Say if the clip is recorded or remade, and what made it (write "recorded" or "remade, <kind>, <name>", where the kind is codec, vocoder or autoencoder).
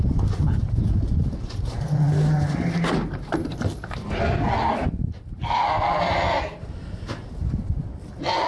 recorded